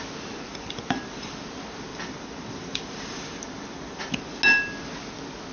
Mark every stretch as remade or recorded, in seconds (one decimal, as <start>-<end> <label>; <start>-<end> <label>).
0.0-0.5 recorded; 0.5-1.3 remade; 1.3-1.9 recorded; 1.9-4.1 remade; 4.1-5.5 recorded